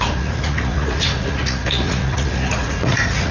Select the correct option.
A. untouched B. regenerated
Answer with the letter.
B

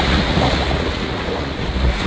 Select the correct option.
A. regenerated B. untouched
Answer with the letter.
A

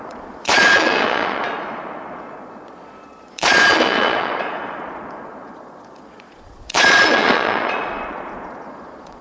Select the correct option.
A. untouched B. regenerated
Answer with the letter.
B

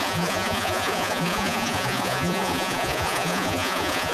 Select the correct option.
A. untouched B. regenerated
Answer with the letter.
B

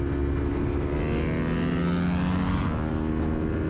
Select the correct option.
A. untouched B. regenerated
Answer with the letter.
A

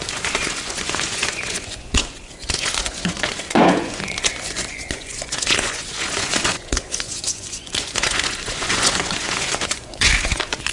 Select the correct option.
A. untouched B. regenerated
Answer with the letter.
B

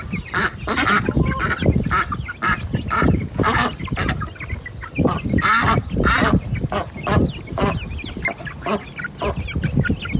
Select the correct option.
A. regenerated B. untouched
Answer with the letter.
B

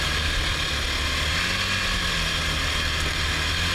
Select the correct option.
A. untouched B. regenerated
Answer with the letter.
A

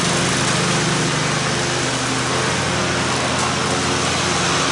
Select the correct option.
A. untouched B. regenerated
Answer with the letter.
A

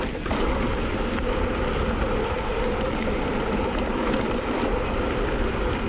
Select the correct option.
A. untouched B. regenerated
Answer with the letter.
A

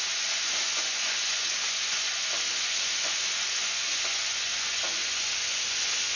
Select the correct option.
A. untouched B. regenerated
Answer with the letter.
B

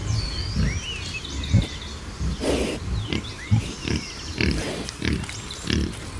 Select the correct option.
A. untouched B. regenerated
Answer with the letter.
A